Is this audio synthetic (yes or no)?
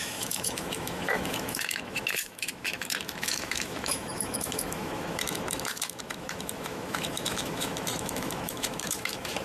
yes